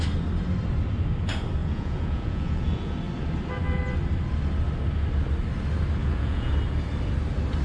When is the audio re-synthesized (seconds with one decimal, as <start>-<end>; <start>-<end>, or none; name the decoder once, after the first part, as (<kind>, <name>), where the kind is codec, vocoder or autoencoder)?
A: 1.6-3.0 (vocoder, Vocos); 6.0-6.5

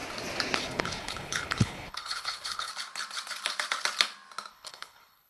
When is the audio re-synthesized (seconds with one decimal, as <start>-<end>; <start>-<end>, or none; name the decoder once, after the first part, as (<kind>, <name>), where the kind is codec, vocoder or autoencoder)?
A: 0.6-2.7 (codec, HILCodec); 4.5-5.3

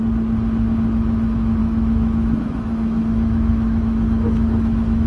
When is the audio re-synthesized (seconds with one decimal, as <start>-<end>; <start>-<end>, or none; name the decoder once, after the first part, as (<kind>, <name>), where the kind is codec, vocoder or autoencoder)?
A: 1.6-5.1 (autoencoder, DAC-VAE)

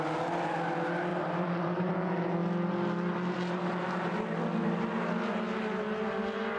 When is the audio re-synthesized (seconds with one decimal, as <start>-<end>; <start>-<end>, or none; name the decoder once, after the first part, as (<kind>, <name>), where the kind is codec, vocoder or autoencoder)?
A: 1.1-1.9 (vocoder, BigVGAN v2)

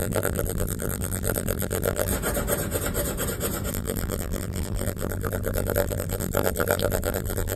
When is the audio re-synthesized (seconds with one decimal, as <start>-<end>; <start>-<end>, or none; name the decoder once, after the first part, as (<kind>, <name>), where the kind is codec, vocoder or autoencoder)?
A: 0.0-2.1 (vocoder, BigVGAN v2); 3.7-7.6